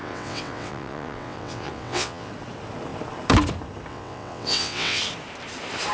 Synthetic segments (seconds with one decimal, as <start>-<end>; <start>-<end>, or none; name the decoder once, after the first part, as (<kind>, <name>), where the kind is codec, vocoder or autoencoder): 0.0-2.3 (vocoder, WaveNeXt); 3.9-5.0